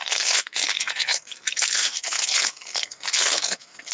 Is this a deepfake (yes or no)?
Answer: yes